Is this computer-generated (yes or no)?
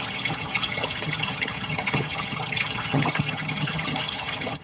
yes